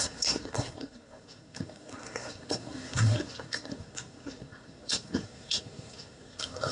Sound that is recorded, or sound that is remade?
remade